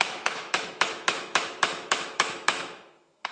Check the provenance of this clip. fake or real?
fake